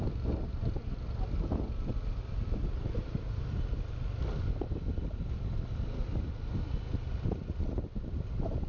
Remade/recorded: recorded